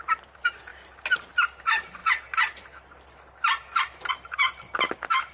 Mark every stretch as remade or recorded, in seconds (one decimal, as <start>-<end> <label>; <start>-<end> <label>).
0.0-5.3 recorded